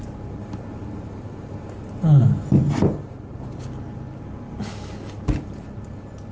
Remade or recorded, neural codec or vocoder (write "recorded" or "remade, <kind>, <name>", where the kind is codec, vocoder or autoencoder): recorded